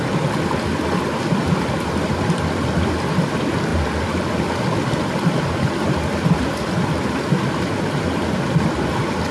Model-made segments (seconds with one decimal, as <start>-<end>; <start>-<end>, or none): none

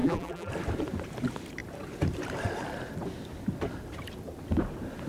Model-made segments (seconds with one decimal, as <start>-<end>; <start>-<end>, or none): 0.0-0.5

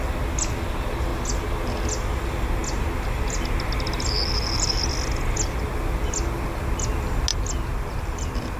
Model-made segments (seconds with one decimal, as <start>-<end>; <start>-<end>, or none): none

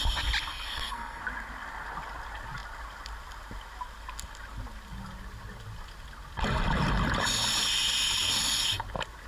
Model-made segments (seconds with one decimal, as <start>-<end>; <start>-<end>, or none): 0.5-1.2